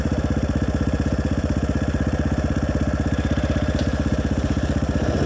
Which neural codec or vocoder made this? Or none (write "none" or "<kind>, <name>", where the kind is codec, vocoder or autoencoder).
vocoder, BigVGAN v2